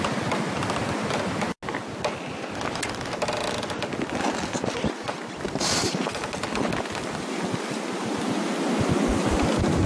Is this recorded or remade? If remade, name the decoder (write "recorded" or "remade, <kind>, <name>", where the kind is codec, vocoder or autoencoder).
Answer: recorded